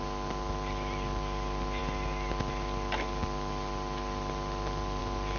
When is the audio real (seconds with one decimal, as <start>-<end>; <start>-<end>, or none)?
0.0-5.4